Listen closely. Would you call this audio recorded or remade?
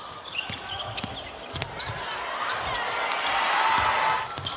recorded